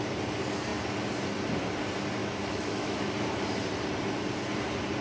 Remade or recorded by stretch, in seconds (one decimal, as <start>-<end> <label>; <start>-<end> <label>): 0.0-2.2 recorded; 2.2-3.1 remade; 3.1-5.0 recorded